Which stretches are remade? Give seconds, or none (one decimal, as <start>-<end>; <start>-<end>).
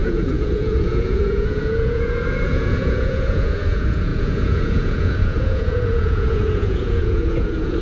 0.0-7.8